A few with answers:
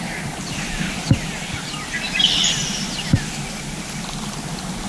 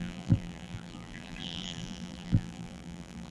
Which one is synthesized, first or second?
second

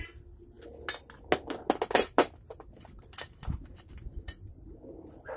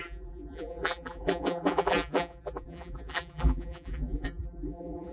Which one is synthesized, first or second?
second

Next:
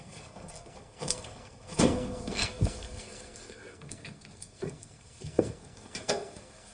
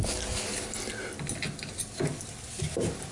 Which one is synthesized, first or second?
first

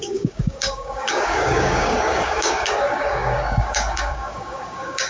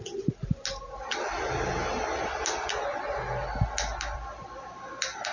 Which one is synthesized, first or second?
first